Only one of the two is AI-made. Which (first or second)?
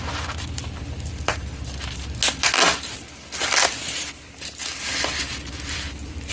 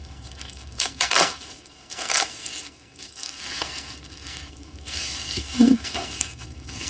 second